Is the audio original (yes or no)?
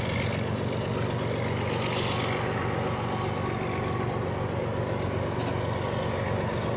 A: yes